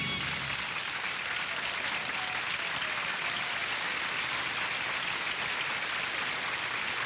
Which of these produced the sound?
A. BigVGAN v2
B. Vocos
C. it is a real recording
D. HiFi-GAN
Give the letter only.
C